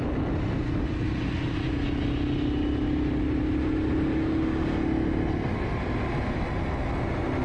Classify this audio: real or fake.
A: real